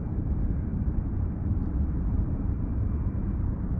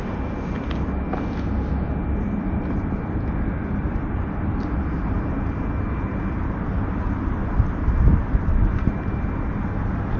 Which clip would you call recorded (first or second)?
second